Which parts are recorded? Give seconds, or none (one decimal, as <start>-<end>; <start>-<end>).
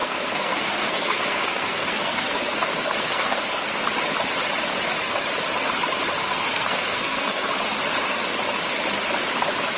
3.9-6.2; 7.5-9.8